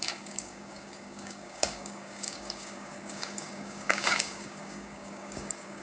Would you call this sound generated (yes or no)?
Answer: yes